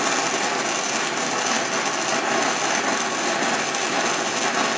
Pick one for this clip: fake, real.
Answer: real